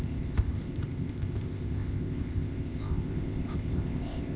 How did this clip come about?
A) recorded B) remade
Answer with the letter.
B